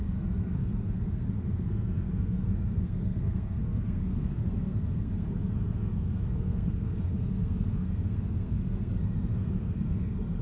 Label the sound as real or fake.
fake